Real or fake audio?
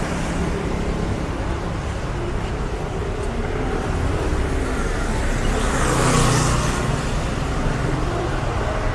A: real